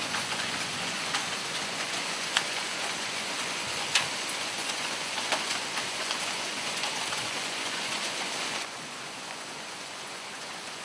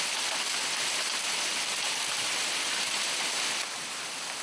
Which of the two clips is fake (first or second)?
first